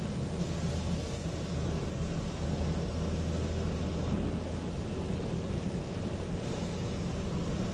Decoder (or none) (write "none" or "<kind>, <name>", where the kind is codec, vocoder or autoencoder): none